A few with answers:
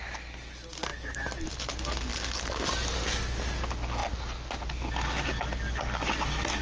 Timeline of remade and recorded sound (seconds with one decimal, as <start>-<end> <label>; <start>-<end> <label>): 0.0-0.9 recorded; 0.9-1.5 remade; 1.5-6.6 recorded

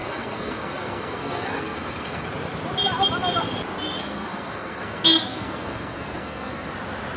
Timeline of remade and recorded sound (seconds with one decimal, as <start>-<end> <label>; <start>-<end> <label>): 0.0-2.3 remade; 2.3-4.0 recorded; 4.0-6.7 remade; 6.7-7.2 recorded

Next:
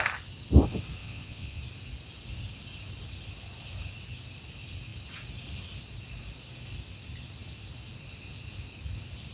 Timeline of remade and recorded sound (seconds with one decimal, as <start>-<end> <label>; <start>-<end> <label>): 0.0-1.0 recorded; 1.0-1.6 remade; 1.6-9.3 recorded

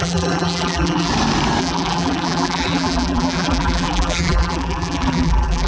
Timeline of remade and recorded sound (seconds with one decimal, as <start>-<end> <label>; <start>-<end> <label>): 0.0-1.1 remade; 1.1-1.6 recorded; 1.6-5.7 remade